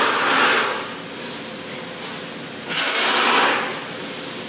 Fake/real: real